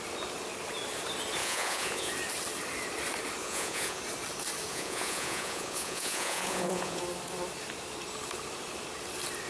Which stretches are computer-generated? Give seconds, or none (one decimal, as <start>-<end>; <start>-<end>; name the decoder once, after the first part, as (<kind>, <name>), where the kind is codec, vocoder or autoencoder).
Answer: 1.4-2.1 (vocoder, Vocos); 3.4-4.0; 4.7-7.0